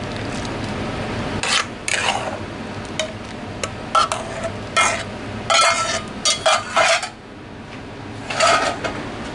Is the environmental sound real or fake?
real